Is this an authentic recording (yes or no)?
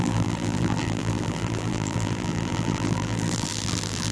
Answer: no